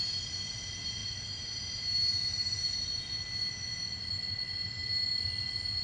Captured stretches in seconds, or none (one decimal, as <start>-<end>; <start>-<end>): 0.0-5.8